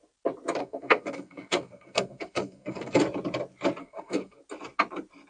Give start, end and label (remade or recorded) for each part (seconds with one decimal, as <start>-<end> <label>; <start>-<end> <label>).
0.0-0.6 recorded; 0.6-3.0 remade; 3.0-3.8 recorded; 3.8-4.4 remade; 4.4-5.3 recorded